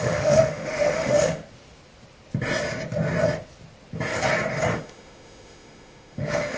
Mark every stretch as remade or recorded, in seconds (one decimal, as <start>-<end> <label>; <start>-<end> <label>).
0.0-1.4 remade; 1.4-4.7 recorded; 4.7-6.6 remade